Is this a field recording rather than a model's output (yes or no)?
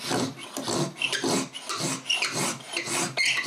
yes